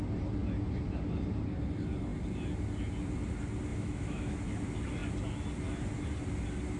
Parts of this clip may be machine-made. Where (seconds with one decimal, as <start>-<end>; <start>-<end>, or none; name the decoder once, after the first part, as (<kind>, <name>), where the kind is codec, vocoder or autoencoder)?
3.7-4.4 (autoencoder, DAC-VAE)

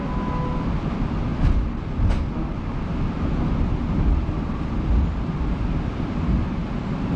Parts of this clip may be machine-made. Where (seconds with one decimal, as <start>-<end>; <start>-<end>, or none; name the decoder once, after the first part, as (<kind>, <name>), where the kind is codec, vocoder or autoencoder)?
none

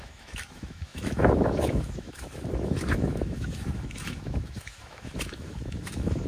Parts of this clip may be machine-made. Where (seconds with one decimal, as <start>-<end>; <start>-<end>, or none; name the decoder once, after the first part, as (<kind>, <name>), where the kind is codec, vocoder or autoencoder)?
0.0-6.3 (autoencoder, DAC-VAE)

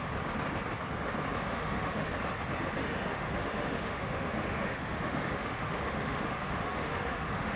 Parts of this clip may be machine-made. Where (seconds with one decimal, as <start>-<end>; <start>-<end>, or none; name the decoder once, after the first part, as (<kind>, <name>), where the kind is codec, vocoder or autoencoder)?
1.4-2.1 (autoencoder, DAC-VAE); 2.8-7.6

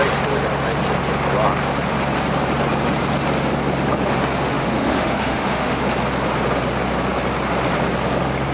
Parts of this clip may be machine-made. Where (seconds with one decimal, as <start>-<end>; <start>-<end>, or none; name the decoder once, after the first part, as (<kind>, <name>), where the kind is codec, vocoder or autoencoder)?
4.5-5.8 (autoencoder, DAC-VAE)

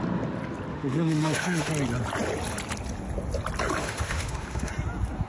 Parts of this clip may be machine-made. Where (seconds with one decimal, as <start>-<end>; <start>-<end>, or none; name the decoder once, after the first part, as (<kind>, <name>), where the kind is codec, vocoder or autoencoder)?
0.7-1.7 (autoencoder, DAC-VAE); 3.8-4.7

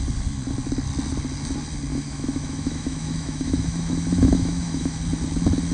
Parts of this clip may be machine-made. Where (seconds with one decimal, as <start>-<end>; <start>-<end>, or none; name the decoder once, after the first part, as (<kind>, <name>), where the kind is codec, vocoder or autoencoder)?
1.9-5.0 (autoencoder, DAC-VAE)